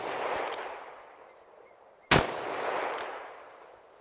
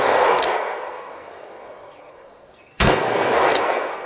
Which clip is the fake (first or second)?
second